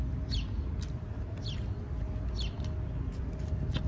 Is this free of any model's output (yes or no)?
yes